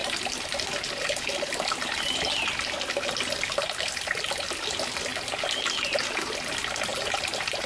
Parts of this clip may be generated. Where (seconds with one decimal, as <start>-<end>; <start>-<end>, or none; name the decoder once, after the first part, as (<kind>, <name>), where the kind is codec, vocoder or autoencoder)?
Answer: 6.9-7.7 (vocoder, BigVGAN v2)